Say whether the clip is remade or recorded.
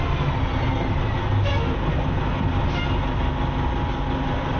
recorded